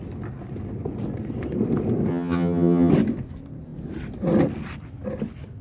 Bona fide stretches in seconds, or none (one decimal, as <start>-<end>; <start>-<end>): 0.0-2.1; 2.9-5.6